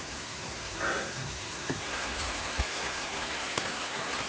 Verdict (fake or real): fake